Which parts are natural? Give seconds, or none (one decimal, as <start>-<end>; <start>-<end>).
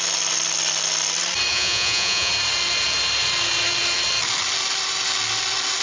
0.0-1.5; 2.3-5.8